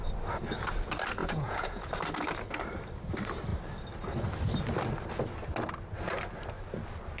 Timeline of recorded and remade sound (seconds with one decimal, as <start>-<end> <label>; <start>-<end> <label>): 0.0-1.2 recorded; 1.2-1.9 remade; 1.9-7.2 recorded